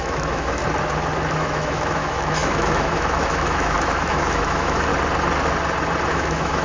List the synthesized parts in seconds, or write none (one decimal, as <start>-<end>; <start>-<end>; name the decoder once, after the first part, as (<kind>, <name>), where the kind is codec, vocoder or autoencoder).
0.0-0.6 (autoencoder, DAC-VAE); 1.3-4.9; 6.1-6.6